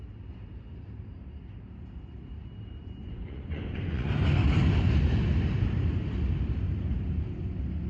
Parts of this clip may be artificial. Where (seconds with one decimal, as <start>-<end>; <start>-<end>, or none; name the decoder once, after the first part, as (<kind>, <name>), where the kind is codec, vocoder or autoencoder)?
3.0-4.1 (vocoder, Vocos)